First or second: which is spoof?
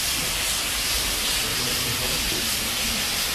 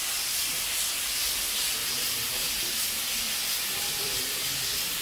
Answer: first